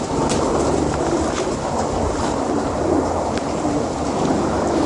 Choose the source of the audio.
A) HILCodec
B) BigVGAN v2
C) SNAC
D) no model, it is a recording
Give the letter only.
D